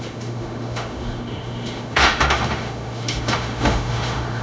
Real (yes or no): no